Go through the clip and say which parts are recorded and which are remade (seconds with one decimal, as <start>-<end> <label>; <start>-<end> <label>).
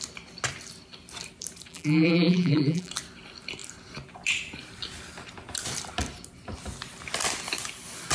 0.0-1.7 recorded; 1.7-2.9 remade; 2.9-8.1 recorded